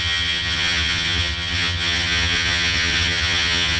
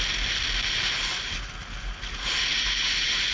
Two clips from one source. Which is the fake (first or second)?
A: first